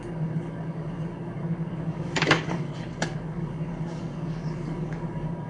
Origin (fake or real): fake